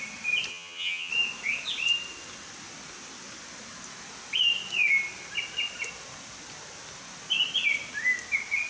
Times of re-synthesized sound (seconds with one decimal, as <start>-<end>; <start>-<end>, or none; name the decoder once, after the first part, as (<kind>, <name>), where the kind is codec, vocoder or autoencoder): 0.5-1.1 (vocoder, HiFi-GAN)